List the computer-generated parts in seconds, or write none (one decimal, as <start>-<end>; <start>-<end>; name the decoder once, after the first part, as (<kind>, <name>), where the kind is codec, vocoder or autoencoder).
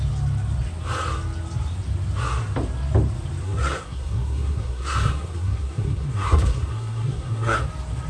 3.4-7.6 (codec, SNAC)